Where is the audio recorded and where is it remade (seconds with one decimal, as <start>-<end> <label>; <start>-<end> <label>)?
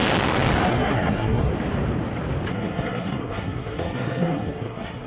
0.0-0.7 recorded; 0.7-1.5 remade; 1.5-2.5 recorded; 2.5-5.1 remade